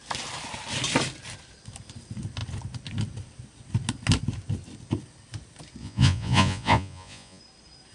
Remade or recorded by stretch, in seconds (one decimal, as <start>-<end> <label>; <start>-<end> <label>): 0.0-5.8 recorded; 5.8-7.4 remade; 7.4-7.9 recorded